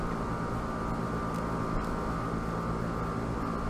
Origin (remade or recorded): recorded